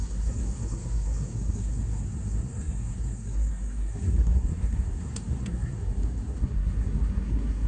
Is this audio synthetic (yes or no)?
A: yes